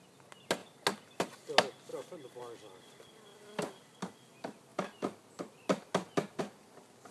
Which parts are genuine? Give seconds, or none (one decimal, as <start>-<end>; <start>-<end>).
0.0-7.1